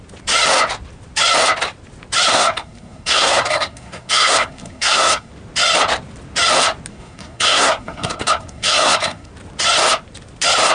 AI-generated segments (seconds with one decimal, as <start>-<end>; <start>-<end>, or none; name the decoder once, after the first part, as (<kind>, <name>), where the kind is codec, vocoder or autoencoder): 2.3-5.3 (codec, SNAC); 6.9-9.3